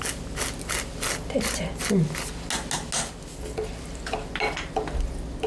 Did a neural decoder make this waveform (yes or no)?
no